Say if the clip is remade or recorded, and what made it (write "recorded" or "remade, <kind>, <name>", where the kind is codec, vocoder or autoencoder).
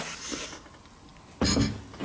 recorded